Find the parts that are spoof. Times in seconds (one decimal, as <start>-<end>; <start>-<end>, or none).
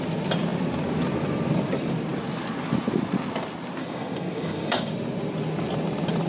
3.8-4.9